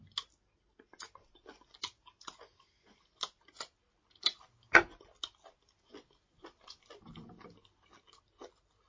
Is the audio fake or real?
real